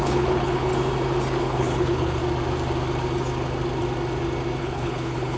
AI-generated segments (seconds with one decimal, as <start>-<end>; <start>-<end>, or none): 0.0-0.7; 1.4-2.2; 4.6-5.4